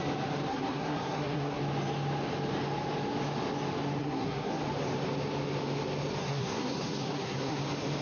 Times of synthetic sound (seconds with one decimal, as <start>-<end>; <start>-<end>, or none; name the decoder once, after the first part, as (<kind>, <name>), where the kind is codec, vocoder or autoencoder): 0.5-1.6 (codec, SNAC); 4.0-4.6; 6.2-7.6